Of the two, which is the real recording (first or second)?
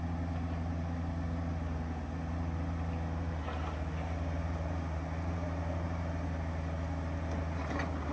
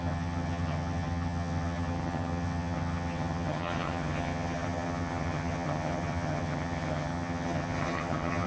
first